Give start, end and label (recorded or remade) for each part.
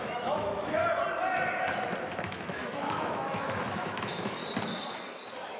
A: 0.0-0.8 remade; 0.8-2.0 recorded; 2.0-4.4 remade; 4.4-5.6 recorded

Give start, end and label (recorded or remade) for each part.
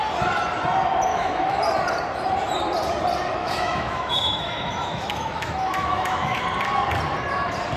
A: 0.0-1.1 recorded; 1.1-1.6 remade; 1.6-3.4 recorded; 3.4-6.4 remade; 6.4-7.8 recorded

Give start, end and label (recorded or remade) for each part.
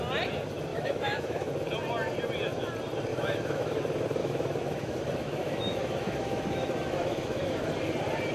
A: 0.0-0.7 recorded; 0.7-1.5 remade; 1.5-3.1 recorded; 3.1-3.8 remade; 3.8-4.2 recorded; 4.2-7.7 remade; 7.7-8.3 recorded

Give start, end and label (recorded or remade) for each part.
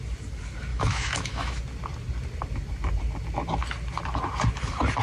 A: 0.0-0.7 recorded; 0.7-1.6 remade; 1.6-5.0 recorded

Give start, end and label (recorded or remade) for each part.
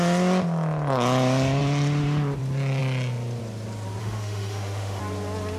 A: 0.0-4.0 recorded; 4.0-5.0 remade; 5.0-5.6 recorded